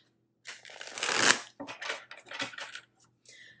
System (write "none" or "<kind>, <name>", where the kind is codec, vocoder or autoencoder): none